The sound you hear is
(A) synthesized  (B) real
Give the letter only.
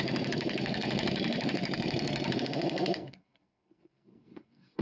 A